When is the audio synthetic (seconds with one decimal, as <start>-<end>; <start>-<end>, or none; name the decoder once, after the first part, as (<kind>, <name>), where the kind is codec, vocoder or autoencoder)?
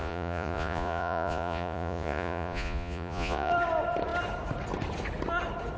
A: 0.0-3.5 (vocoder, Vocos)